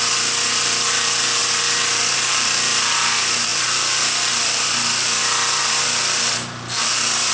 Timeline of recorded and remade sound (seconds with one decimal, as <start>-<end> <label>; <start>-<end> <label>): 0.0-7.3 remade